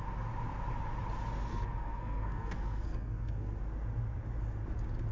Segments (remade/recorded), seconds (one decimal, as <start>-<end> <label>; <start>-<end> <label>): 0.0-1.5 recorded; 1.5-3.6 remade; 3.6-5.1 recorded